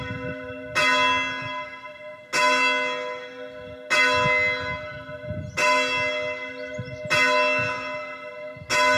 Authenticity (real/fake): real